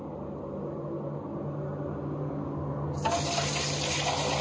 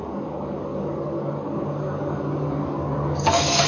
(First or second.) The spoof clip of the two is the second